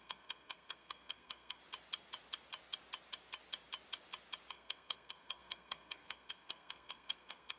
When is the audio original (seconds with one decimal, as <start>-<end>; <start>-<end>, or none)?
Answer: 1.6-4.5